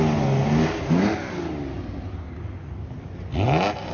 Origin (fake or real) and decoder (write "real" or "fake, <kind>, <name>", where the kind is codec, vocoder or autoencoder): real